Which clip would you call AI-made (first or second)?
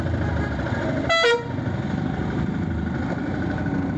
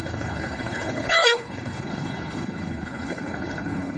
second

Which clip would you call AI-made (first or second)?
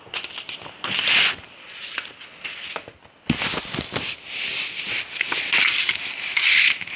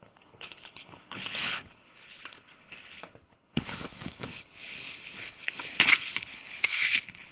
second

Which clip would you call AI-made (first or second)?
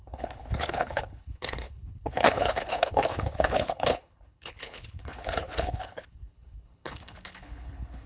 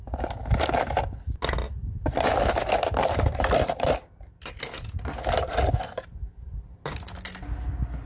first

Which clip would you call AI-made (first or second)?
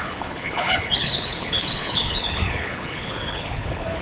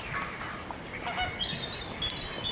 first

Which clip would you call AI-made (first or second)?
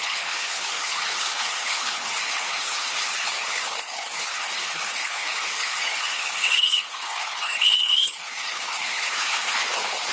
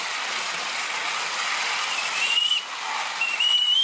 first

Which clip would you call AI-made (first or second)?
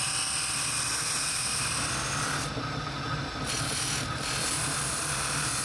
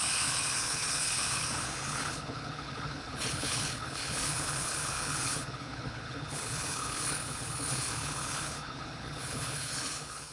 second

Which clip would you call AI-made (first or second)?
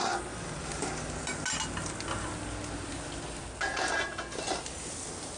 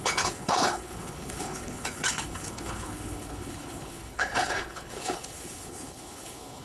second